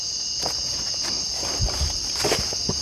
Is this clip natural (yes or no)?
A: yes